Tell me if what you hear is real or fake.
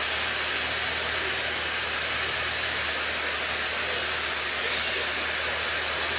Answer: real